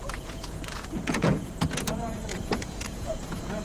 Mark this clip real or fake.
fake